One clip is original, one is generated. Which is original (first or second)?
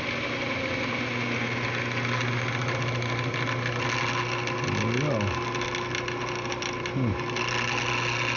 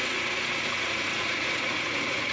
first